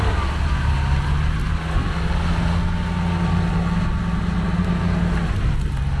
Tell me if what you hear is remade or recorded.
recorded